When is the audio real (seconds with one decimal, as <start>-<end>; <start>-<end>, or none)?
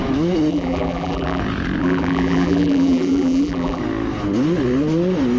0.0-0.5; 1.4-1.8; 3.8-5.4